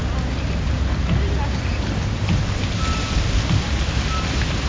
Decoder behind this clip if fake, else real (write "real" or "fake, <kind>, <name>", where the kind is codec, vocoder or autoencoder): real